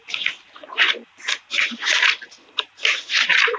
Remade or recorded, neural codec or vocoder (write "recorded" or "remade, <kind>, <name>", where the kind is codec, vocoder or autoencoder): recorded